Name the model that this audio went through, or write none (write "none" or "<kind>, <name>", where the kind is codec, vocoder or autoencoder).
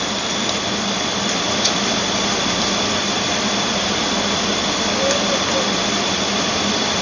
none